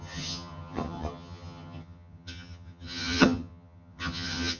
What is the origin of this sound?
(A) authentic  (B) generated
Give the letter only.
B